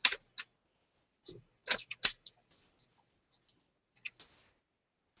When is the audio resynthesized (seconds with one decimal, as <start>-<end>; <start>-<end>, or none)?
none